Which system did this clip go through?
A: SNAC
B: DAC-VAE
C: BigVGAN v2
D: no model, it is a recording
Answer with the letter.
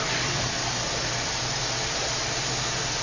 D